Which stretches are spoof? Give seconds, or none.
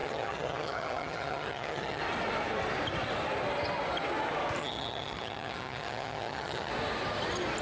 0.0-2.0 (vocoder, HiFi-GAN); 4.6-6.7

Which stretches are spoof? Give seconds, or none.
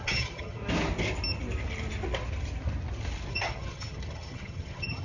0.0-0.6 (vocoder, HiFi-GAN); 3.3-5.0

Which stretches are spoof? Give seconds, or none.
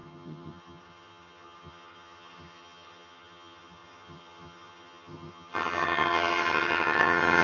0.0-7.4 (vocoder, HiFi-GAN)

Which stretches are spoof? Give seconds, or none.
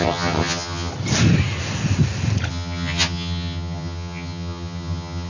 0.0-0.9 (vocoder, HiFi-GAN); 2.5-5.3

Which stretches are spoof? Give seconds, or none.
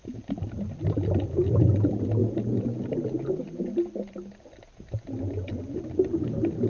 none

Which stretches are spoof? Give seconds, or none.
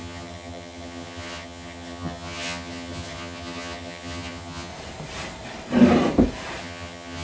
0.0-4.7 (vocoder, HiFi-GAN); 6.6-7.2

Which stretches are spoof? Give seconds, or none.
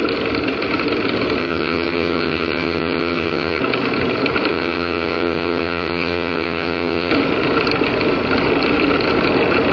1.4-3.6 (vocoder, HiFi-GAN); 4.5-7.1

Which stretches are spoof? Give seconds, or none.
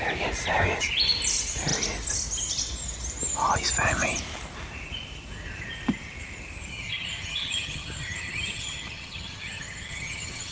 6.7-10.5 (vocoder, HiFi-GAN)